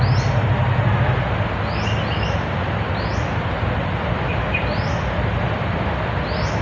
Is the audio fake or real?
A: real